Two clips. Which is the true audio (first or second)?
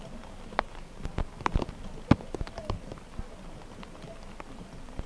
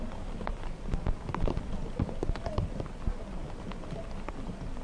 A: first